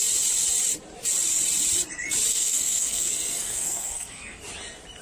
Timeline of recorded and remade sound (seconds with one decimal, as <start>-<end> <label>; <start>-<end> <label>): 0.0-2.3 recorded; 2.3-4.4 remade; 4.4-5.0 recorded